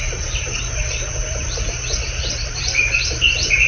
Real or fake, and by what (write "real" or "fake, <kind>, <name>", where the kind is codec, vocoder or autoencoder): fake, vocoder, BigVGAN v2